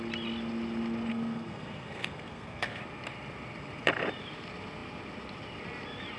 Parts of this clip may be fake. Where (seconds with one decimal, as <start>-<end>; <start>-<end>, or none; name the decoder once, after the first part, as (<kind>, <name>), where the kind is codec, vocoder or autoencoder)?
1.1-2.8 (codec, SNAC)